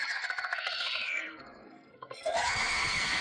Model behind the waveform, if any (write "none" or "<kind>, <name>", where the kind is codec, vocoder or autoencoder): codec, SNAC